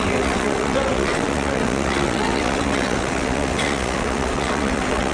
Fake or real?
fake